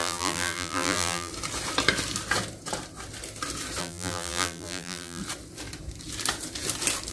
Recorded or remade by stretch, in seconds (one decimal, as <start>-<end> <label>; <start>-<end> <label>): 0.0-1.3 remade; 1.3-3.8 recorded; 3.8-5.2 remade; 5.2-7.1 recorded